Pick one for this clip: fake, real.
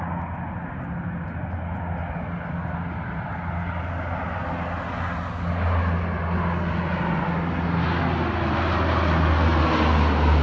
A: real